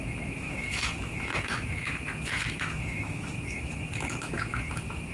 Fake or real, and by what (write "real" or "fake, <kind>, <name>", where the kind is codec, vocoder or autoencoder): fake, autoencoder, DAC-VAE